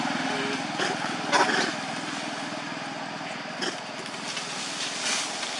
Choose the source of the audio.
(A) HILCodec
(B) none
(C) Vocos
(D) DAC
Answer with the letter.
B